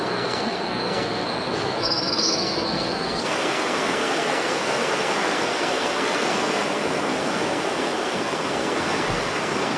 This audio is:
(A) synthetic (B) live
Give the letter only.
A